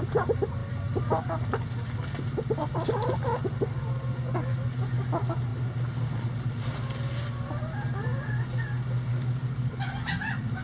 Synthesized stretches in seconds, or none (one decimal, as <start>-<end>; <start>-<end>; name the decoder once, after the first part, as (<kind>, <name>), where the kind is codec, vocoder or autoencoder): 9.1-9.8 (codec, DAC)